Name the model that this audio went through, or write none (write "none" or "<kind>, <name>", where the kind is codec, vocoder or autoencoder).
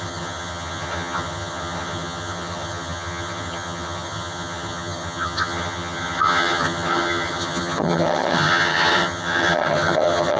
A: vocoder, HiFi-GAN